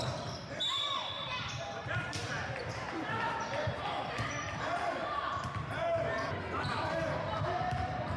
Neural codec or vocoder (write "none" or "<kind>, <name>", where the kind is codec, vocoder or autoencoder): vocoder, BigVGAN v2